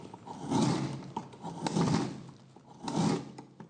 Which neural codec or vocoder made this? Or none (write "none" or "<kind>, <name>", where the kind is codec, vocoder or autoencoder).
none